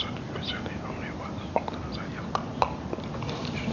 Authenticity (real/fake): real